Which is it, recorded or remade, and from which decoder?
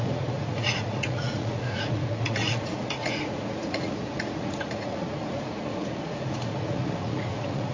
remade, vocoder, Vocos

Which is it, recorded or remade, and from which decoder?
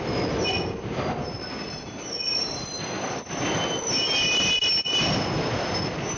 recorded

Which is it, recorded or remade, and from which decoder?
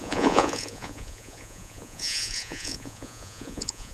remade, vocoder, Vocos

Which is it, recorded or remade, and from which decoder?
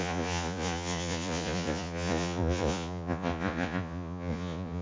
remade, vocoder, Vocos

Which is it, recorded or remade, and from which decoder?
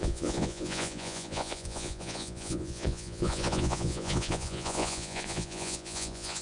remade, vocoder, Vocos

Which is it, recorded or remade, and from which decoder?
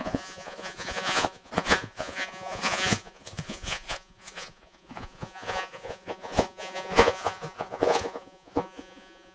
remade, vocoder, Vocos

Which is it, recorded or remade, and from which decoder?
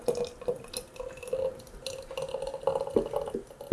recorded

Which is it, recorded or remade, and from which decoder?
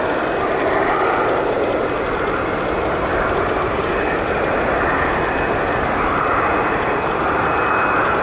recorded